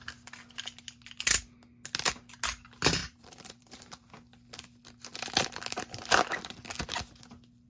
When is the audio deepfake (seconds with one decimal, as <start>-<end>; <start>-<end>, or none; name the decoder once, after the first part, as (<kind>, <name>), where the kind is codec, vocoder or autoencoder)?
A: 3.0-4.1 (vocoder, BigVGAN v2)